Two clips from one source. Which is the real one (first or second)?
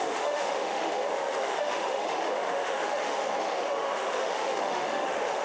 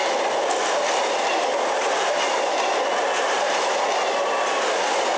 second